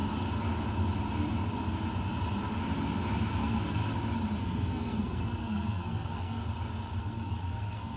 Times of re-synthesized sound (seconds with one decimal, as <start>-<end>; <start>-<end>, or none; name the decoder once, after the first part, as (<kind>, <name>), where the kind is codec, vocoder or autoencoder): 3.3-3.8 (codec, SNAC); 4.4-6.4; 7.0-8.0